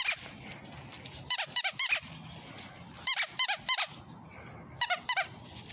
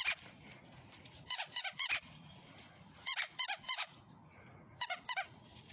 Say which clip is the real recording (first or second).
first